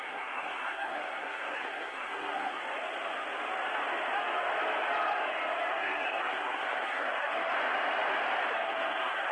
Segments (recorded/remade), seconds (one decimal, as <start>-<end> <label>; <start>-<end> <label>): 0.0-2.6 remade; 2.6-5.7 recorded; 5.7-7.5 remade; 7.5-8.5 recorded; 8.5-9.3 remade